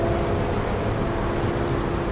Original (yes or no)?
yes